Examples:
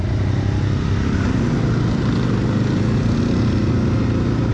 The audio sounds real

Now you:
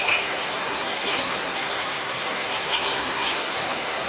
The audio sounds fake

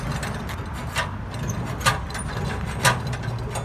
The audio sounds real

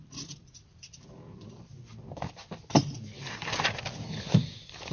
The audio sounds real